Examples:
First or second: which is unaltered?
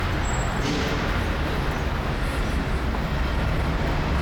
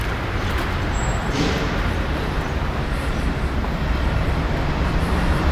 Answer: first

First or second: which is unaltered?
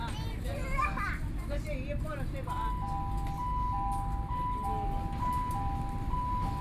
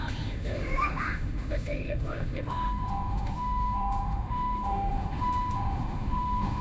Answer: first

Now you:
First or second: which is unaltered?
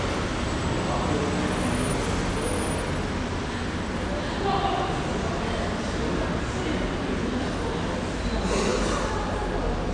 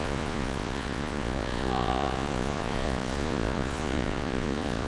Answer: first